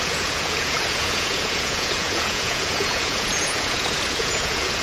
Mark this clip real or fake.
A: fake